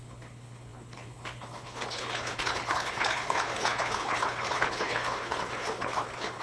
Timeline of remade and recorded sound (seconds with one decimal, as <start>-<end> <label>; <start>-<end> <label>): 0.0-6.4 remade